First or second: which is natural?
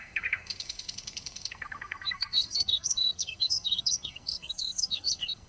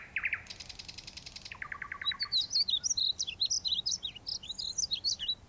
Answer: second